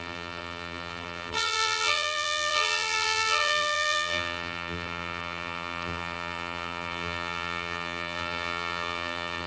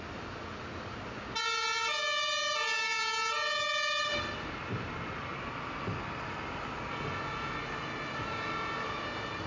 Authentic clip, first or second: second